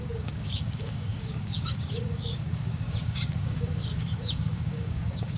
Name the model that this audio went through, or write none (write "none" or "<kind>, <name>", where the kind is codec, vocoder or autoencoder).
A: codec, DAC